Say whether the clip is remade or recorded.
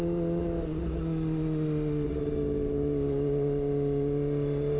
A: recorded